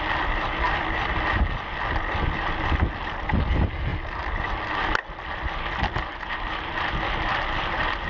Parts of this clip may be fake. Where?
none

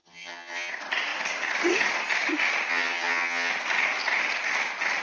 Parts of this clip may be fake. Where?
0.0-0.7 (vocoder, HiFi-GAN); 2.7-3.5

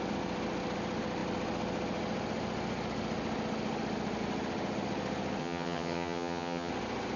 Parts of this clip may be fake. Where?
5.4-6.7 (vocoder, HiFi-GAN)